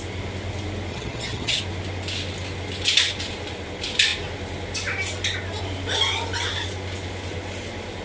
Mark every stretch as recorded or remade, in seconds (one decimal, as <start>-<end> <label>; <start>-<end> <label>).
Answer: 0.0-0.9 recorded; 0.9-1.6 remade; 1.6-8.0 recorded